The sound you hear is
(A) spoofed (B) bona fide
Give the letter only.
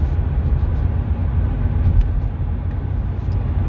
B